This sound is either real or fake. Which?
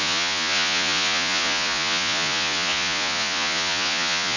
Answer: fake